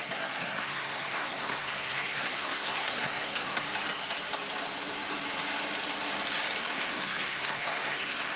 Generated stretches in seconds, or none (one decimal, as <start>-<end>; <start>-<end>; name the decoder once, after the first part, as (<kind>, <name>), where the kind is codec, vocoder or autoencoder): 0.0-3.6 (codec, SNAC); 6.6-8.4